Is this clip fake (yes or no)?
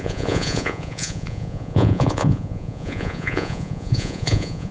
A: yes